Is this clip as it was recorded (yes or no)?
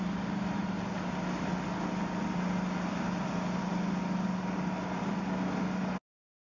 yes